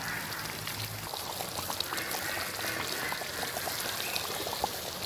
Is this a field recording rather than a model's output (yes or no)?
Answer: yes